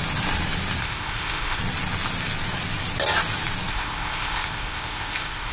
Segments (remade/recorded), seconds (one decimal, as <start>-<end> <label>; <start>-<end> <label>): 0.0-0.8 recorded; 0.8-1.6 remade; 1.6-3.7 recorded; 3.7-5.5 remade